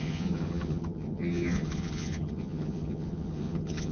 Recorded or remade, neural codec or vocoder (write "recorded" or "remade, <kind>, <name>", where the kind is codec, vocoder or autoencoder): remade, vocoder, HiFi-GAN